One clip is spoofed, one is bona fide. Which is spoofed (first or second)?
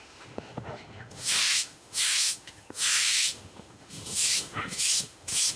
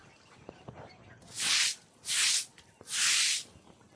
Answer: first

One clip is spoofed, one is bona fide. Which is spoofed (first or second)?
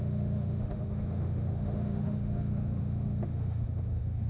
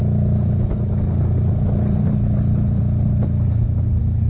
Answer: first